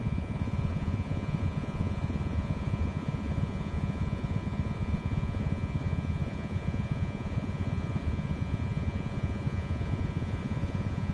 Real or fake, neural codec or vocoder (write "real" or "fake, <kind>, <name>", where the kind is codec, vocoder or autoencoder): fake, vocoder, Vocos